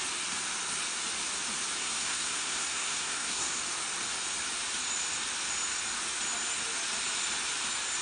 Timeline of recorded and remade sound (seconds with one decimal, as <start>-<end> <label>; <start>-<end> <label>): 0.0-1.8 recorded; 1.8-3.6 remade; 3.6-8.0 recorded